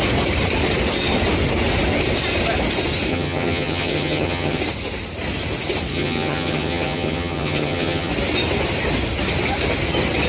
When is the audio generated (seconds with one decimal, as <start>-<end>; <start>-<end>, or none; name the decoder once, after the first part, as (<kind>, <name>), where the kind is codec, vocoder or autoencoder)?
3.1-4.6 (vocoder, HiFi-GAN); 5.9-8.1